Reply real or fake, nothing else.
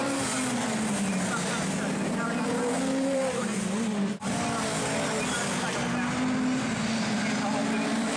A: real